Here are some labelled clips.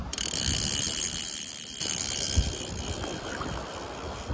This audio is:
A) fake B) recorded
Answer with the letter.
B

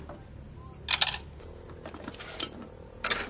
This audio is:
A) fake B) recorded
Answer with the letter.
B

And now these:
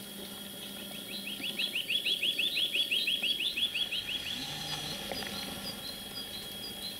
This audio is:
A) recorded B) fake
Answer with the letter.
A